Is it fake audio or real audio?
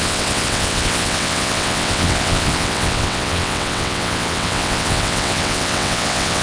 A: fake